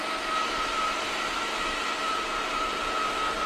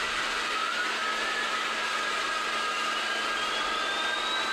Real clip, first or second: second